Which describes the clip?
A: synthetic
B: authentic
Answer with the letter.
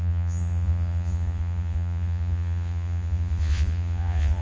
A